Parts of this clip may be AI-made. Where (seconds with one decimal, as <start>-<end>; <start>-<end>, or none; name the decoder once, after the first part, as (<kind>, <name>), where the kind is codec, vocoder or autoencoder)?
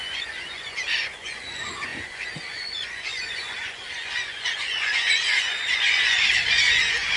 0.0-7.2 (vocoder, Vocos)